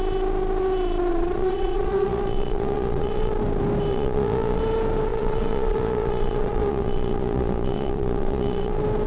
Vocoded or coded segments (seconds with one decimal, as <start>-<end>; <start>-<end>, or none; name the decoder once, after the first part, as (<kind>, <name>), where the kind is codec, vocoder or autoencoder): 1.1-3.3 (vocoder, Vocos); 3.9-4.6; 5.1-8.7